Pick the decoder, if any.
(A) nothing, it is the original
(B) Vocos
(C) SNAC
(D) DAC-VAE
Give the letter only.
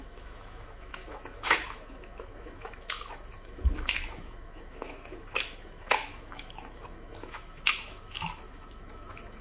D